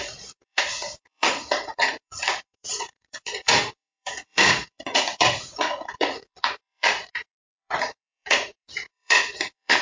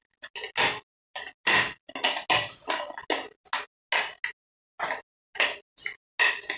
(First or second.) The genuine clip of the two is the second